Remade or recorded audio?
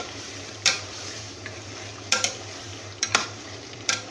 remade